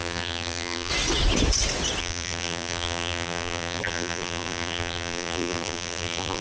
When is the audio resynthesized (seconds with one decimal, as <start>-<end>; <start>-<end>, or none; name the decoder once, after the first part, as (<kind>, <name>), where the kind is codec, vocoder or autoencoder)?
0.0-0.9 (vocoder, BigVGAN v2); 2.0-6.4